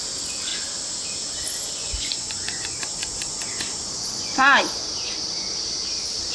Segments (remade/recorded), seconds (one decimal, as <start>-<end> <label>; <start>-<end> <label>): 0.0-1.8 recorded; 1.8-5.6 remade; 5.6-6.3 recorded

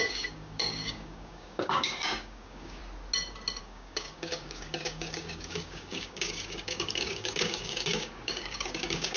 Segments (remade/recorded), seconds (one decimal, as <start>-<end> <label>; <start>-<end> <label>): 0.0-2.8 remade; 2.8-3.6 recorded; 3.6-9.2 remade

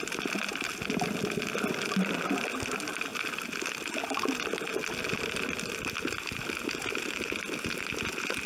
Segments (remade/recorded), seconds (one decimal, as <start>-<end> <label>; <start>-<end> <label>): 0.0-8.5 recorded

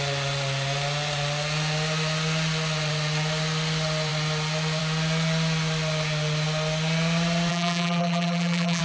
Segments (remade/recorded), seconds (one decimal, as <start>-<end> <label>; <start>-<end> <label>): 0.0-7.5 recorded; 7.5-8.8 remade

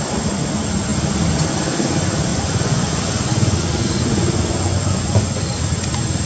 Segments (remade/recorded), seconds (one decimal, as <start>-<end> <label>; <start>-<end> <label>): 0.0-2.3 recorded; 2.3-5.5 remade; 5.5-6.3 recorded